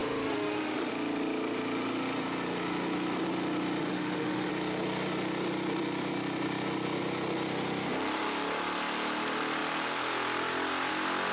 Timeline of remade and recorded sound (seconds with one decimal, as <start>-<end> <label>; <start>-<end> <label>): 0.0-0.9 remade; 0.9-3.8 recorded; 3.8-4.5 remade; 4.5-11.3 recorded